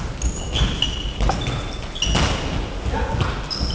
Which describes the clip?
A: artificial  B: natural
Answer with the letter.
B